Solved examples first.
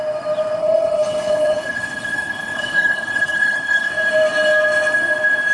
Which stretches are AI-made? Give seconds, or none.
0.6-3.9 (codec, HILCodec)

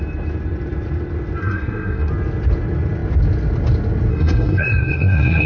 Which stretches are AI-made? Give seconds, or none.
1.4-2.1 (codec, SNAC); 4.1-5.5

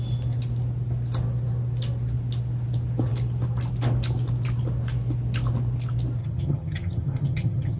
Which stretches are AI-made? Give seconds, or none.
6.2-7.8 (vocoder, HiFi-GAN)

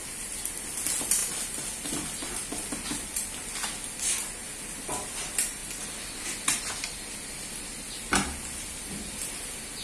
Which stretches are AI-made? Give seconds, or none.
none

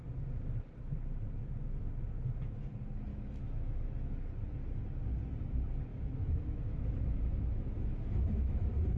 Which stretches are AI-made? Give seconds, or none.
3.1-4.3 (autoencoder, DAC-VAE); 5.9-9.0

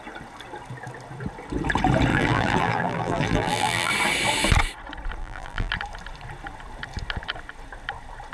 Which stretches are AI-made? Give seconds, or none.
2.1-3.9 (vocoder, BigVGAN v2); 5.2-5.7